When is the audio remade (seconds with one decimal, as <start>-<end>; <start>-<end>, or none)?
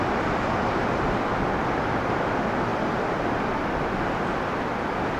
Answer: none